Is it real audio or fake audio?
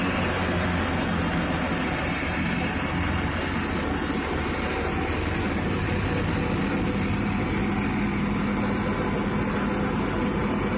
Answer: real